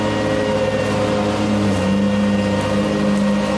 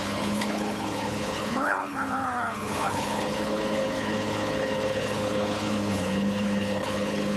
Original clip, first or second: first